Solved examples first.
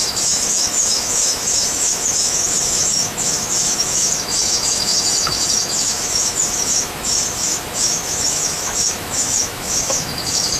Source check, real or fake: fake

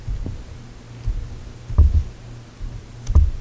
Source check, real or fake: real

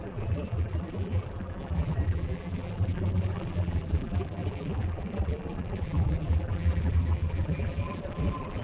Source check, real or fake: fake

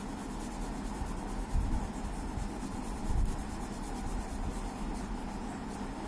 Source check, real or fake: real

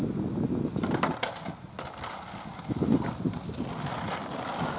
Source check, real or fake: real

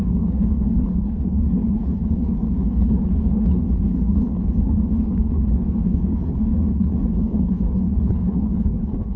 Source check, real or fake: fake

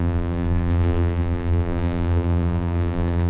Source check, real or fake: fake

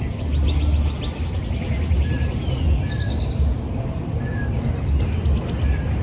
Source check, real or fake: real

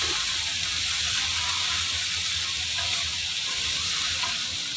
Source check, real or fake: real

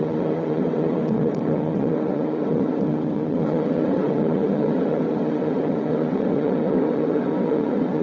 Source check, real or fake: fake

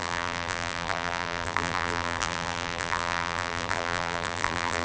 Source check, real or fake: fake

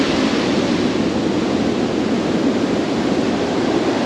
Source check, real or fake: real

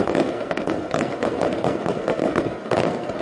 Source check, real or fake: fake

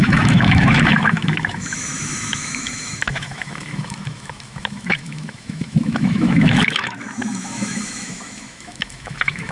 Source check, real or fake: fake